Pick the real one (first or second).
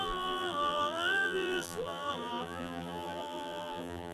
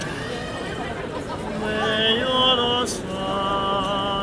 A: second